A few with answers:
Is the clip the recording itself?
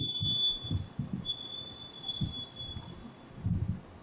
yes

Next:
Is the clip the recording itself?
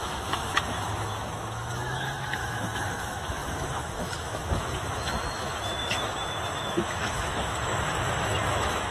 no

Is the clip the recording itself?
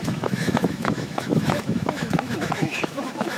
no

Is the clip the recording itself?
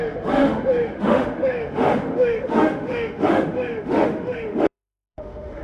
no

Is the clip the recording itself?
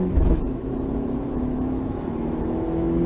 no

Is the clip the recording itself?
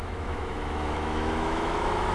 no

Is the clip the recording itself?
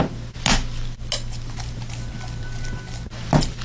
yes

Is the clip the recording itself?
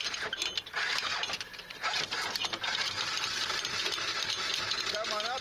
yes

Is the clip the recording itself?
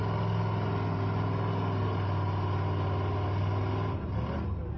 yes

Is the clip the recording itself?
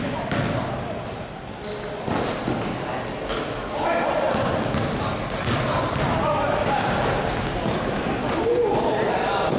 yes